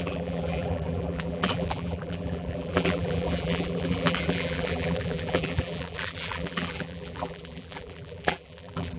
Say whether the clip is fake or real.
fake